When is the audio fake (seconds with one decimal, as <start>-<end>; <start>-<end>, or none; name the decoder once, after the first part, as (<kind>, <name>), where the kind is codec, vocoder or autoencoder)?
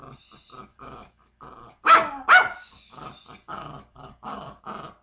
0.7-3.1 (codec, DAC); 3.5-4.6